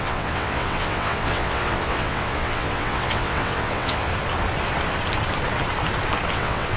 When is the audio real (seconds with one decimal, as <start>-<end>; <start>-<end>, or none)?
4.1-6.3

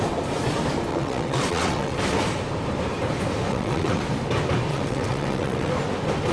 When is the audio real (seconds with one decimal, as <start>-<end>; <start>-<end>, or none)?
0.0-0.9; 2.0-3.5; 4.0-4.7; 5.7-6.3

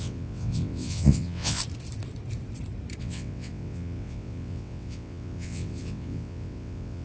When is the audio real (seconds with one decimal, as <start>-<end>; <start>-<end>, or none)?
1.6-3.0

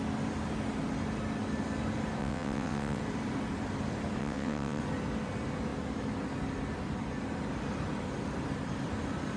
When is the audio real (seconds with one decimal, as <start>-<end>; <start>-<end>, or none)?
0.0-2.2; 3.0-4.2; 4.8-9.4

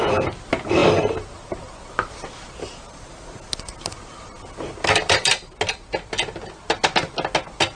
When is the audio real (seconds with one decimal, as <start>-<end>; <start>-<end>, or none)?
0.0-7.8

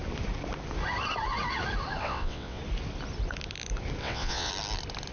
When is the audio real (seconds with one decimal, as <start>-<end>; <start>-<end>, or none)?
0.0-2.0; 2.6-4.0; 4.5-5.1

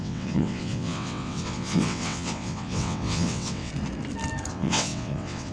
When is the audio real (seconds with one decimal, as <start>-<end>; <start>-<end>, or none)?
3.7-4.5